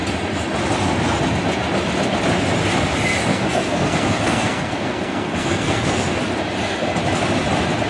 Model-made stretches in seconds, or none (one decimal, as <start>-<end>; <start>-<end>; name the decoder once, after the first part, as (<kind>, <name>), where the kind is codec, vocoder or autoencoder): 3.3-6.2 (codec, SNAC)